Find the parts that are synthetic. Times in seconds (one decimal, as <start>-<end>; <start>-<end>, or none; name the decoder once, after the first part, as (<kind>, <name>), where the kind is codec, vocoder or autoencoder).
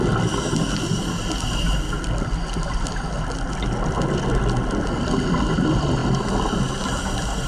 none